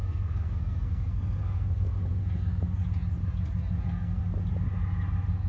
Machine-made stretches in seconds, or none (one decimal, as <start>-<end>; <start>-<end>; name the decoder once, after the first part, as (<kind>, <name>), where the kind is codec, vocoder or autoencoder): 0.0-2.8 (codec, SNAC); 3.8-4.2